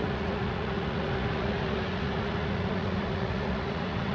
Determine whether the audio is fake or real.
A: fake